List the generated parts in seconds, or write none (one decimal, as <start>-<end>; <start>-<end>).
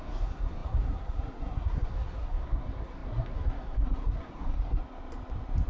0.0-4.8